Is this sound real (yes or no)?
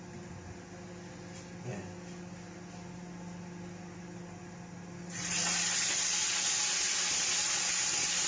yes